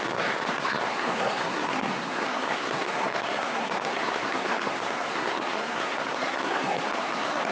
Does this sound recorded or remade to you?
remade